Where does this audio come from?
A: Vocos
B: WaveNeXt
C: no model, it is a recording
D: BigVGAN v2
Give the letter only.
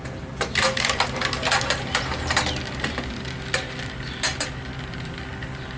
C